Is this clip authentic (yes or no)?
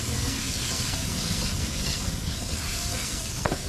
no